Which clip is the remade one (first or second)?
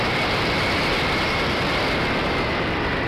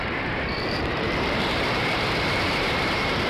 second